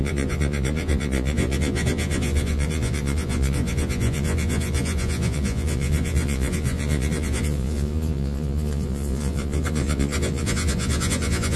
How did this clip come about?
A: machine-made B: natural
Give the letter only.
A